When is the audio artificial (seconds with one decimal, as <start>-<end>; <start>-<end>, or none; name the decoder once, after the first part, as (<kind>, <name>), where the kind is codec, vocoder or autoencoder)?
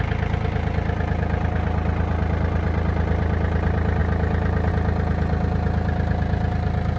none